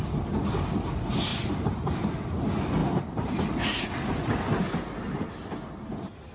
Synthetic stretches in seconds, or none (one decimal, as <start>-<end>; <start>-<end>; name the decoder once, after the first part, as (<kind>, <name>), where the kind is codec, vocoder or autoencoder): 1.3-2.0 (vocoder, BigVGAN v2); 2.8-3.9